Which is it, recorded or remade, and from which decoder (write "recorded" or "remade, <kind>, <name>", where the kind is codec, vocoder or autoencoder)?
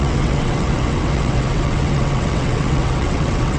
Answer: remade, vocoder, WaveNeXt